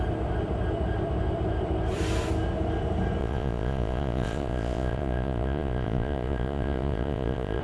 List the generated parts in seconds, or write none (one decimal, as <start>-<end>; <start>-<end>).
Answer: 3.2-7.6